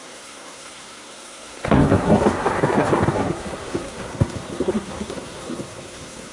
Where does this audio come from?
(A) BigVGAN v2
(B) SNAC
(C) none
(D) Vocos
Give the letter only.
B